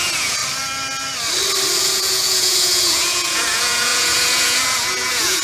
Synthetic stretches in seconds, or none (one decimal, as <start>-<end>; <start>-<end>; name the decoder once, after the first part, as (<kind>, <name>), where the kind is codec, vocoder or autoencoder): 0.0-0.4 (vocoder, Vocos); 1.8-5.4